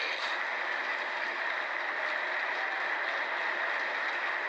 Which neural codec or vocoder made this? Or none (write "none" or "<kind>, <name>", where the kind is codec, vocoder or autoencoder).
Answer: none